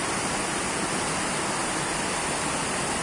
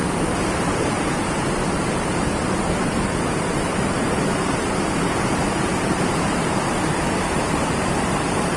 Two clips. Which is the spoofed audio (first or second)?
second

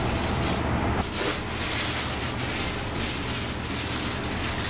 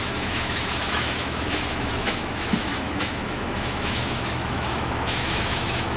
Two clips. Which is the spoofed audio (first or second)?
second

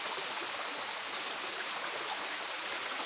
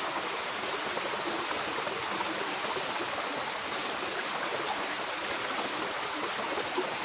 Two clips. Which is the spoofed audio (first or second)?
second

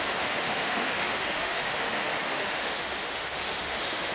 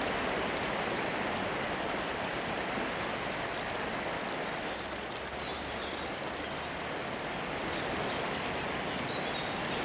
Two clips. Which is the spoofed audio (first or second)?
first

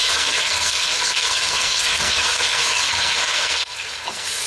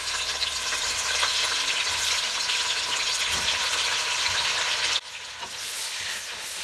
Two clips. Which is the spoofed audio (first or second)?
first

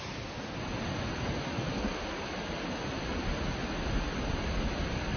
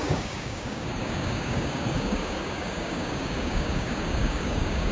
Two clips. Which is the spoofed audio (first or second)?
second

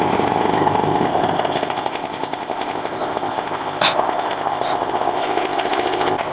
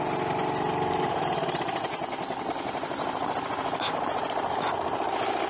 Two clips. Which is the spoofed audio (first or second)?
first